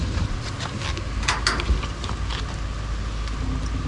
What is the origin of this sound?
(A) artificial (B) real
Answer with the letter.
B